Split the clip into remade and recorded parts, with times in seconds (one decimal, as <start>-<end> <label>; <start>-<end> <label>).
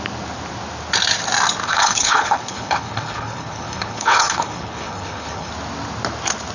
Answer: 0.0-1.6 recorded; 1.6-5.5 remade; 5.5-6.5 recorded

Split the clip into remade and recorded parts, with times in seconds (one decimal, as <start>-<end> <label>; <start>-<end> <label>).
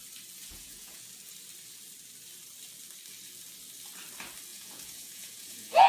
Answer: 0.0-0.4 recorded; 0.4-1.0 remade; 1.0-4.5 recorded; 4.5-5.9 remade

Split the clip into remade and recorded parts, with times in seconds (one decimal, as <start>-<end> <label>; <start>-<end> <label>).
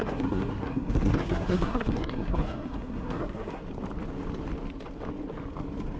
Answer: 0.0-3.6 remade; 3.6-6.0 recorded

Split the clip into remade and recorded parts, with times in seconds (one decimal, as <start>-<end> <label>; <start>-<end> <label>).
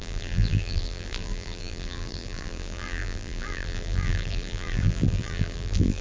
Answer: 0.0-6.0 remade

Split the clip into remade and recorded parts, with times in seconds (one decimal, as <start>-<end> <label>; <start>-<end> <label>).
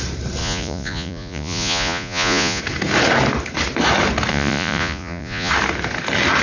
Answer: 0.0-0.4 recorded; 0.4-2.6 remade; 2.6-4.3 recorded; 4.3-5.5 remade; 5.5-6.4 recorded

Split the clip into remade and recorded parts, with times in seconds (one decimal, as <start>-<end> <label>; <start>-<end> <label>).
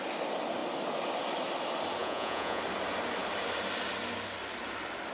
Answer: 0.0-2.0 recorded; 2.0-2.6 remade; 2.6-5.1 recorded